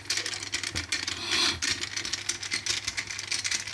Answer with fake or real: real